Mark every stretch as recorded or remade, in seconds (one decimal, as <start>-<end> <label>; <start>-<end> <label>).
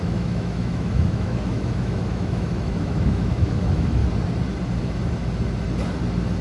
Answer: 0.0-4.0 remade; 4.0-6.4 recorded